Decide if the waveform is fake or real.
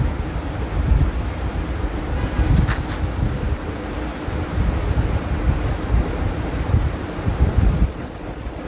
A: real